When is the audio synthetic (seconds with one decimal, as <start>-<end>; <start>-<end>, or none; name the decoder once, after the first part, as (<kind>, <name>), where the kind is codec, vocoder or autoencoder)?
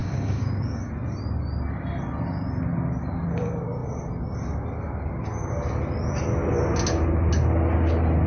0.0-0.9 (codec, DAC)